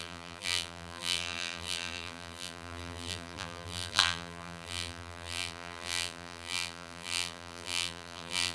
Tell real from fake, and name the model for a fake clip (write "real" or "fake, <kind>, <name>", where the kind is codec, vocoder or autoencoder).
fake, vocoder, BigVGAN v2